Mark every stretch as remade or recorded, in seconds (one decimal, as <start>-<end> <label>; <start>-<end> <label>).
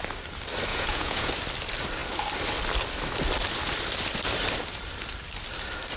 0.0-0.7 recorded; 0.7-1.3 remade; 1.3-6.0 recorded